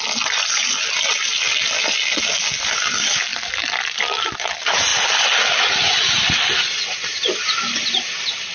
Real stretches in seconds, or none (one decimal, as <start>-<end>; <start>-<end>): 0.0-8.5